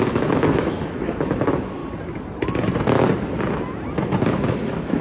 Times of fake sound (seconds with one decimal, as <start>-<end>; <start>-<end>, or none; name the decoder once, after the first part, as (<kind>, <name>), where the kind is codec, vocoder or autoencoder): 0.0-1.8 (autoencoder, DAC-VAE); 4.5-5.0